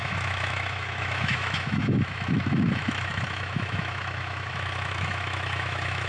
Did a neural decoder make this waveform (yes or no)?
yes